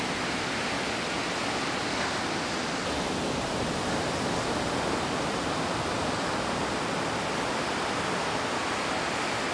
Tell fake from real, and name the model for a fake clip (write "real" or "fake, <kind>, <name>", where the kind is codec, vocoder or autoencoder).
real